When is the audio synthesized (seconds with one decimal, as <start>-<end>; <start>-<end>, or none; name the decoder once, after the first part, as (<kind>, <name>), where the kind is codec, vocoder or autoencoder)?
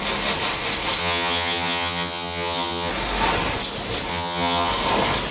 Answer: 1.0-2.9 (vocoder, HiFi-GAN); 4.1-4.7